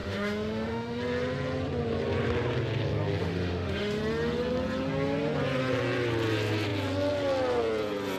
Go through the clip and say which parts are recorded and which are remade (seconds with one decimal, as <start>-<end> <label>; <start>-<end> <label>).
0.0-1.0 remade; 1.0-3.2 recorded; 3.2-4.0 remade; 4.0-8.2 recorded